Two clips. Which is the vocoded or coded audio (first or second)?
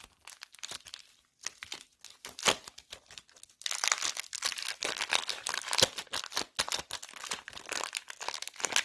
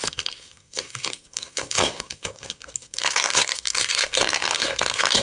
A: second